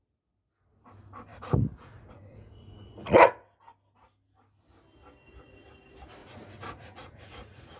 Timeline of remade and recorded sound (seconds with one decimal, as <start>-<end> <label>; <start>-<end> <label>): 0.0-1.3 recorded; 1.3-3.3 remade; 3.3-6.2 recorded; 6.2-7.8 remade